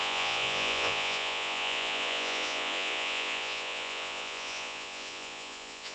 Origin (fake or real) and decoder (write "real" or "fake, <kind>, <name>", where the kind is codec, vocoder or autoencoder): fake, vocoder, Vocos